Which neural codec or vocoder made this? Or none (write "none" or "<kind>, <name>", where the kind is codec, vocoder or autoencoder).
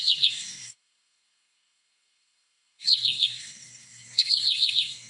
codec, SNAC